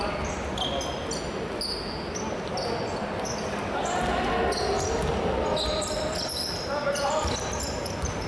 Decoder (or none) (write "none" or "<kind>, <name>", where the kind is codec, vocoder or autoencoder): none